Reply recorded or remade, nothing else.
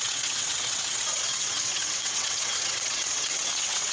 remade